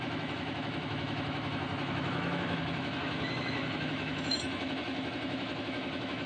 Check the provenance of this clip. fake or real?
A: fake